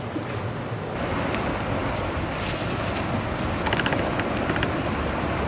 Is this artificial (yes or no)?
no